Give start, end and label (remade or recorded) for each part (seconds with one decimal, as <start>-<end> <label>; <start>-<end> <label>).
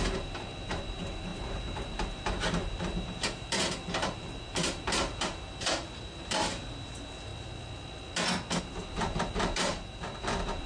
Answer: 0.0-7.3 remade; 7.3-8.6 recorded; 8.6-10.7 remade